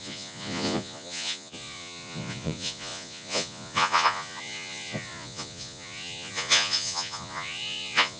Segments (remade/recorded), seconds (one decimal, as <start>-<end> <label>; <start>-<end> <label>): 0.0-8.2 remade